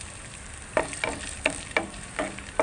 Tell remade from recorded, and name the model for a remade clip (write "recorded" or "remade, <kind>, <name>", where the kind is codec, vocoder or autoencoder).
recorded